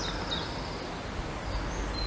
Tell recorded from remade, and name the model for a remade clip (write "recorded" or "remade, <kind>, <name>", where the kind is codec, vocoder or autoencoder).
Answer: recorded